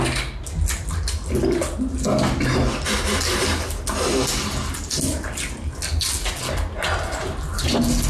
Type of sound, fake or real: real